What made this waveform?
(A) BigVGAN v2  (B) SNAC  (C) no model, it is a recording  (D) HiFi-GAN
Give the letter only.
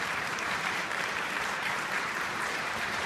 A